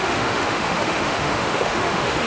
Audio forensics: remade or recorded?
remade